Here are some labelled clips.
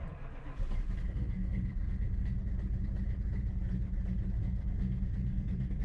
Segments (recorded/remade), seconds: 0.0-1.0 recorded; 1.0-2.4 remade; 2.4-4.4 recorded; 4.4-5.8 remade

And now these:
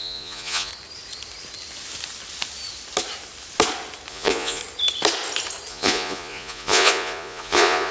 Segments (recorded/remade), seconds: 0.0-0.7 remade; 0.7-4.1 recorded; 4.1-4.6 remade; 4.6-5.7 recorded; 5.7-7.9 remade